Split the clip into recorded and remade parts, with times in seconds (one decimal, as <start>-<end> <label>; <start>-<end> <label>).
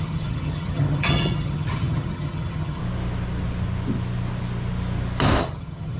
0.0-2.8 remade; 2.8-5.4 recorded; 5.4-6.0 remade